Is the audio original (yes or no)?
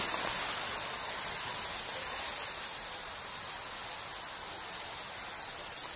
yes